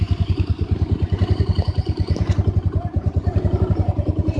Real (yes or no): no